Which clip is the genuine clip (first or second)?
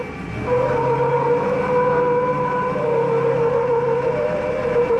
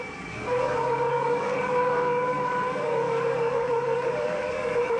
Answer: first